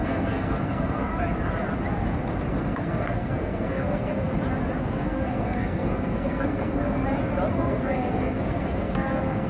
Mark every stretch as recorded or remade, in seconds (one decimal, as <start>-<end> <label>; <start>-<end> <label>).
0.0-1.1 remade; 1.1-2.5 recorded; 2.5-4.3 remade; 4.3-4.8 recorded; 4.8-7.0 remade; 7.0-7.5 recorded; 7.5-9.5 remade

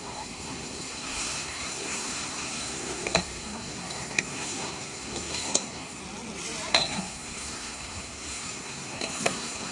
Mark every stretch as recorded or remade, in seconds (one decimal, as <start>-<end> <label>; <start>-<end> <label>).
0.0-6.0 remade; 6.0-6.7 recorded; 6.7-9.7 remade

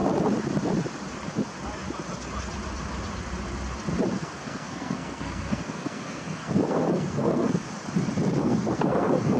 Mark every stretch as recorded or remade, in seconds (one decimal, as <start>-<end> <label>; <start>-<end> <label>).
0.0-4.1 recorded; 4.1-7.7 remade; 7.7-8.4 recorded; 8.4-9.4 remade